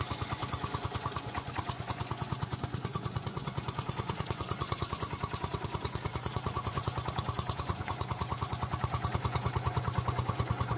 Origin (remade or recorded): remade